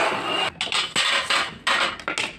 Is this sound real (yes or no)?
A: yes